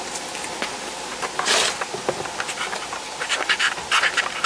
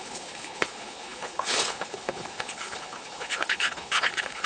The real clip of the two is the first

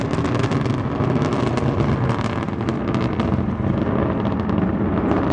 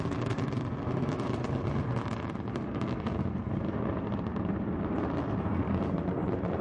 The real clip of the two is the first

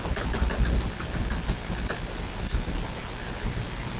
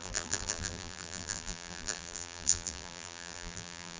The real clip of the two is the first